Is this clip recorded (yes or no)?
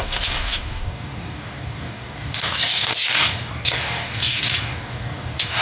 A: no